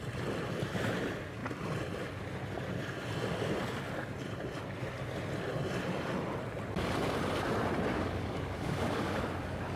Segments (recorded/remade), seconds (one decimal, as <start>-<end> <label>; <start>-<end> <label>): 0.0-7.9 recorded; 7.9-9.8 remade